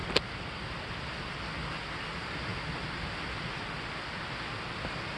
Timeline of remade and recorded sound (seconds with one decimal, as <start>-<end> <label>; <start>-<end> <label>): 0.0-1.1 remade; 1.1-2.5 recorded; 2.5-4.1 remade; 4.1-5.2 recorded